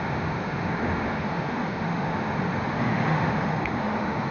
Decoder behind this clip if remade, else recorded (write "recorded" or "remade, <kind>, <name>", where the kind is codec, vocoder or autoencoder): remade, autoencoder, DAC-VAE